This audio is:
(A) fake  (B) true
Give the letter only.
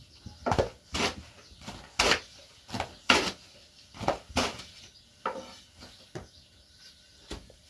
B